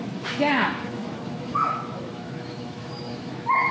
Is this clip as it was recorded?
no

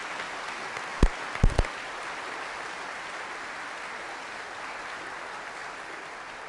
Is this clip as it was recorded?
yes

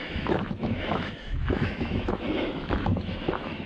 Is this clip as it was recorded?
no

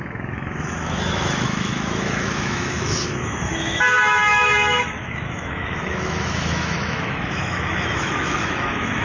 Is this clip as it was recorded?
no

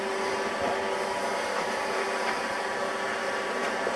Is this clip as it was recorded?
yes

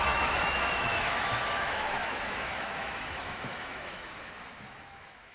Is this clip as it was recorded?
no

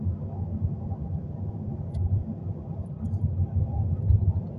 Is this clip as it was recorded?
yes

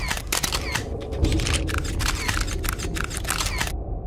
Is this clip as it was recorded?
yes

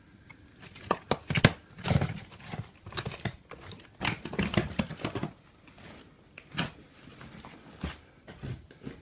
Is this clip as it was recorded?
yes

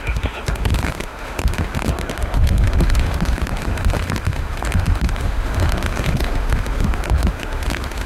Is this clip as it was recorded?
no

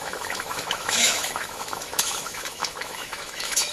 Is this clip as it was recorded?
no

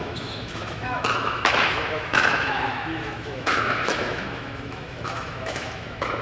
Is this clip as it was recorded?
no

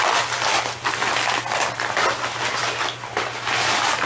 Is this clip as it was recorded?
yes